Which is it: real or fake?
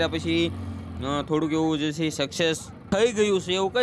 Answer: real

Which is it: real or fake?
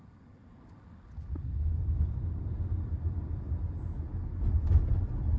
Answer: real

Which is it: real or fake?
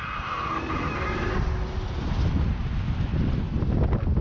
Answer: real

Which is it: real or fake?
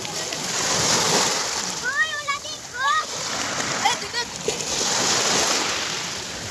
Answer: real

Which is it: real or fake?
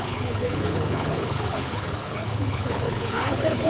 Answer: fake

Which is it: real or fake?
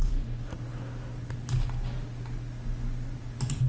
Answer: real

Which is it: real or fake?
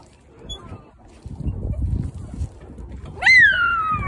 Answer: real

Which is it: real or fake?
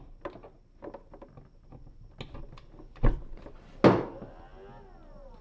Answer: real